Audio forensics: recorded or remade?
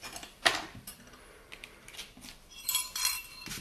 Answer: recorded